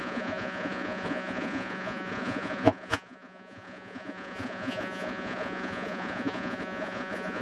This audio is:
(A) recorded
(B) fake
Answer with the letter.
B